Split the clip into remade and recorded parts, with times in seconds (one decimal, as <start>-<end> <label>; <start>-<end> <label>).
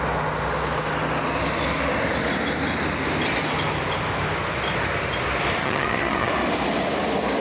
0.0-5.6 recorded; 5.6-6.3 remade; 6.3-7.4 recorded